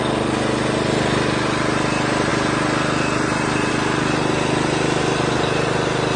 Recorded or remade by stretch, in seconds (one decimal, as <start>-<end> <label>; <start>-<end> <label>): 0.0-6.2 recorded